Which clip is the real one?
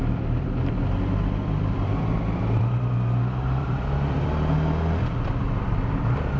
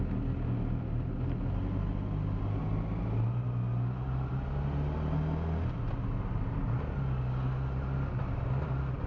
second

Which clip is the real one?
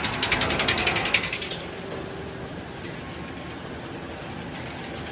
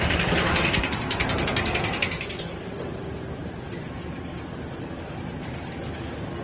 first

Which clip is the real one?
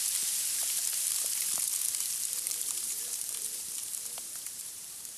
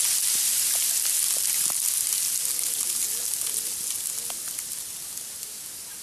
second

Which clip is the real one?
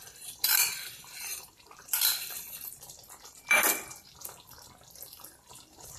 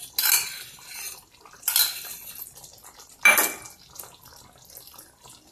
second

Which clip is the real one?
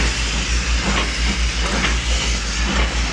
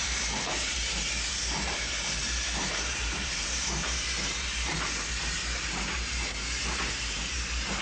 first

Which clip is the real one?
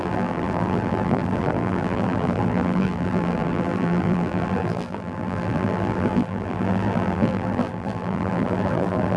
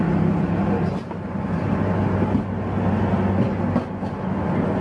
second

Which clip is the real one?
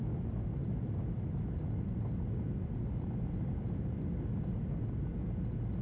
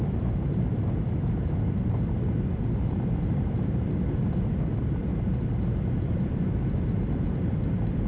first